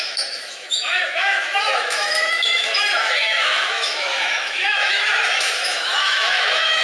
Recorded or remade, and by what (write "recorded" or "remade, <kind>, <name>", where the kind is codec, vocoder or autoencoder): remade, autoencoder, DAC-VAE